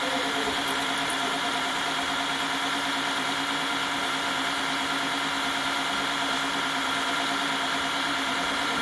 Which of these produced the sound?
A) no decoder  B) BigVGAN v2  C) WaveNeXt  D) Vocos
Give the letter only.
B